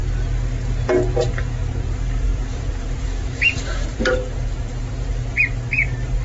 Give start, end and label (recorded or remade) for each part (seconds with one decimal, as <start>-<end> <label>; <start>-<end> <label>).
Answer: 0.0-1.3 recorded; 1.3-6.2 remade